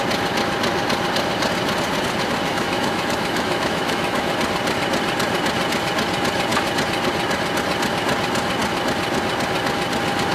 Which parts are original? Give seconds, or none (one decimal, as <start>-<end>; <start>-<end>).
0.0-2.5; 4.3-10.3